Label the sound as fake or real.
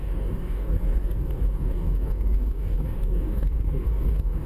fake